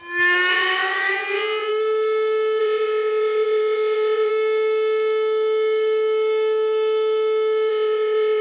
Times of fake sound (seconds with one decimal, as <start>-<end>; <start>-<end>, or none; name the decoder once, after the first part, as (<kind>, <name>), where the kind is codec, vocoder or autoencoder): 0.5-1.7 (vocoder, WaveNeXt); 2.6-4.3; 7.7-8.4